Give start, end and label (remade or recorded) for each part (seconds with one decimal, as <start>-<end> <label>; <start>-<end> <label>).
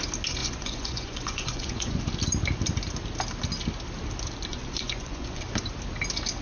0.0-0.4 recorded; 0.4-2.0 remade; 2.0-4.5 recorded; 4.5-5.4 remade; 5.4-6.4 recorded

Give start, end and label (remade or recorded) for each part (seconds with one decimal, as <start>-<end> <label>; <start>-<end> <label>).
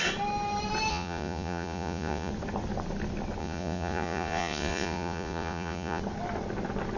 0.0-0.9 recorded; 0.9-2.3 remade; 2.3-3.4 recorded; 3.4-6.0 remade; 6.0-7.0 recorded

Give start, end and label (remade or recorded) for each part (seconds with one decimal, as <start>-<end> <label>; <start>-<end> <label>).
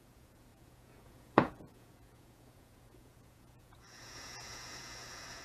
0.0-5.4 remade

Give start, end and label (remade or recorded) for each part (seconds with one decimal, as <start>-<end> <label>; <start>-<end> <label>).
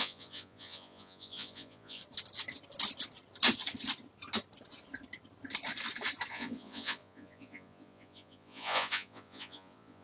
0.0-2.0 remade; 2.0-6.3 recorded; 6.3-10.0 remade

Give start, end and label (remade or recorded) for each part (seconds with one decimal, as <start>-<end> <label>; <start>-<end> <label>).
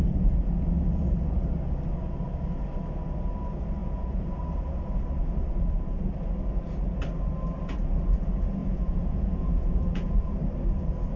0.0-3.8 recorded; 3.8-4.4 remade; 4.4-8.6 recorded; 8.6-10.3 remade; 10.3-11.2 recorded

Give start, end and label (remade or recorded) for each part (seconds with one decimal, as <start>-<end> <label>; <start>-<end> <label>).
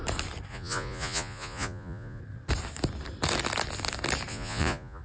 0.0-0.5 recorded; 0.5-2.2 remade; 2.2-4.3 recorded; 4.3-5.0 remade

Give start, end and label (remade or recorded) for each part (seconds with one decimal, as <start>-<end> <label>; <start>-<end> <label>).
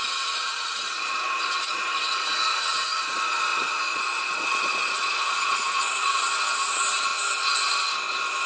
0.0-7.1 remade; 7.1-8.5 recorded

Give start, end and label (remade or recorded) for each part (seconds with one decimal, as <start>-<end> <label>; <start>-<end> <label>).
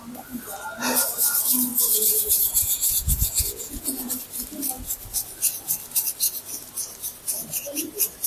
0.0-1.7 recorded; 1.7-4.1 remade; 4.1-8.3 recorded